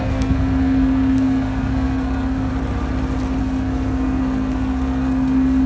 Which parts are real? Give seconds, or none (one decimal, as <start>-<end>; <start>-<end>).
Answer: 2.5-3.4